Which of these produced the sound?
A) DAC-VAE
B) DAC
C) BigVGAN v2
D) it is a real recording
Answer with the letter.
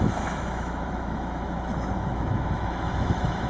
A